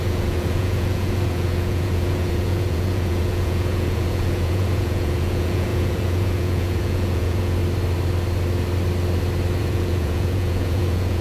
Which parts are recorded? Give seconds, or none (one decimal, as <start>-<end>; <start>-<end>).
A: 7.6-9.6